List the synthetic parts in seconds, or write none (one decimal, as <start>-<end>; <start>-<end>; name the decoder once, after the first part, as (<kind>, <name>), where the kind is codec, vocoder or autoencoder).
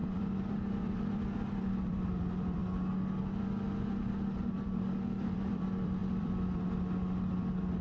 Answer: 0.0-2.6 (vocoder, BigVGAN v2); 4.4-7.8